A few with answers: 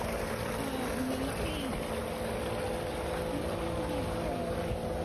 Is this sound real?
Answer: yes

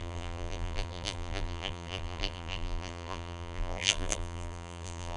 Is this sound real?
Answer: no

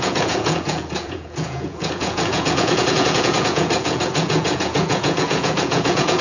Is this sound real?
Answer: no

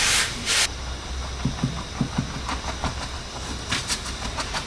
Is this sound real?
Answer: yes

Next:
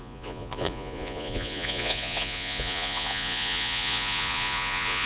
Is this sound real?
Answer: no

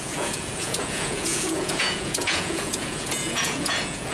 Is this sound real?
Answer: no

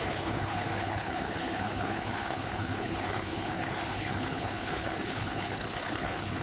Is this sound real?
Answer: no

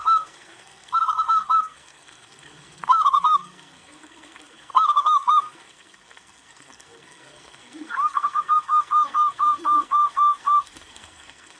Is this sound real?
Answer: no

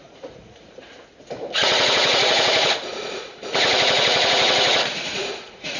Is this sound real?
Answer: no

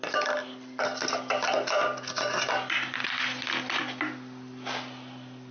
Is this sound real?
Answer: yes